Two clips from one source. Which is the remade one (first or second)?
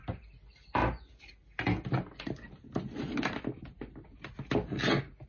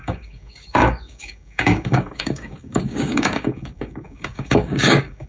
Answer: second